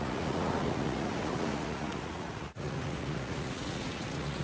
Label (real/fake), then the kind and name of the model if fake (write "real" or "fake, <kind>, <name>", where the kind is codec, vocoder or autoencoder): fake, vocoder, Vocos